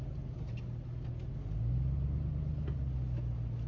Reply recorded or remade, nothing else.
recorded